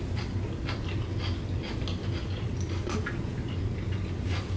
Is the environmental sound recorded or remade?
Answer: recorded